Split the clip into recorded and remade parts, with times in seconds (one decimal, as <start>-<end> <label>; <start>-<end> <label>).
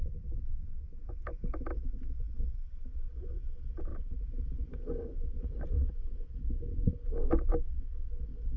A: 0.0-3.9 recorded; 3.9-5.9 remade; 5.9-8.6 recorded